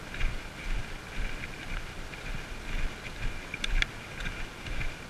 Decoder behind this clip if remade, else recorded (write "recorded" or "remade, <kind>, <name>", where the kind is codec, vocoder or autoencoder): recorded